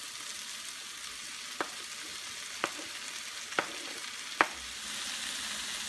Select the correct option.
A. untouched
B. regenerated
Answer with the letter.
A